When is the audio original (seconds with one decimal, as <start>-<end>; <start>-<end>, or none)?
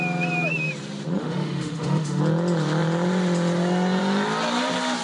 0.0-1.2; 2.2-5.0